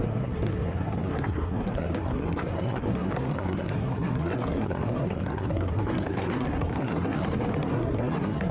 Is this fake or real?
fake